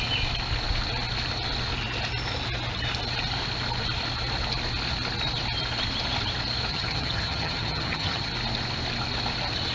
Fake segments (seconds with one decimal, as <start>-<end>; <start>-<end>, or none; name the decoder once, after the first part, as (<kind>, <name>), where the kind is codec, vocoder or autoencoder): 6.7-8.3 (vocoder, HiFi-GAN)